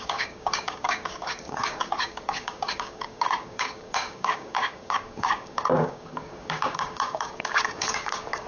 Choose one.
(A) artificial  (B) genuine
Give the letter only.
A